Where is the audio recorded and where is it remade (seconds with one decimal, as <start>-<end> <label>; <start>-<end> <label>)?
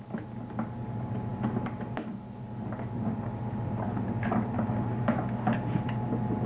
0.0-6.5 recorded